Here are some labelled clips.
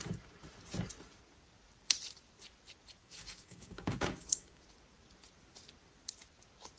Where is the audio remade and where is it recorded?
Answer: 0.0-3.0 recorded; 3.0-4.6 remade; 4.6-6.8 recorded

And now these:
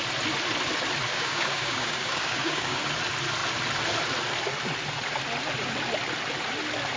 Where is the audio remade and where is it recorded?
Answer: 0.0-1.1 recorded; 1.1-2.8 remade; 2.8-7.0 recorded

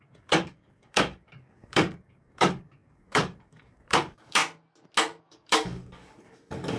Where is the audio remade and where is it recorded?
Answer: 0.0-4.4 remade; 4.4-5.2 recorded; 5.2-6.8 remade

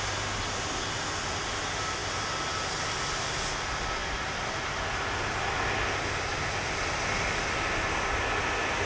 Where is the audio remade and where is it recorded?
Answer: 0.0-8.9 recorded

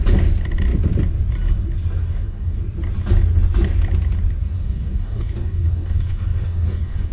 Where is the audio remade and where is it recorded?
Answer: 0.0-2.0 recorded; 2.0-2.6 remade; 2.6-4.4 recorded; 4.4-7.1 remade

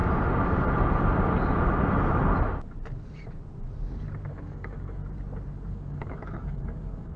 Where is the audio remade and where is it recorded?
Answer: 0.0-4.3 recorded; 4.3-5.0 remade; 5.0-5.7 recorded; 5.7-7.2 remade